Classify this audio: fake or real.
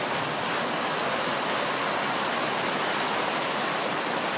real